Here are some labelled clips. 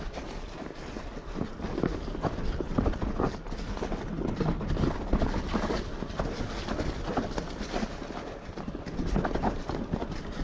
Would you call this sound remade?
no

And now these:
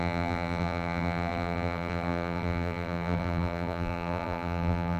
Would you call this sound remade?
yes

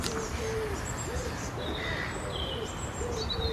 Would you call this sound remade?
no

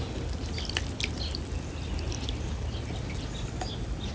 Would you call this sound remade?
no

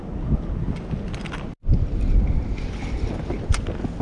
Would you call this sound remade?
no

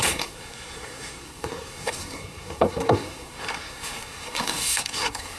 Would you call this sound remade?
yes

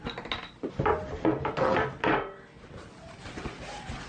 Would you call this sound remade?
no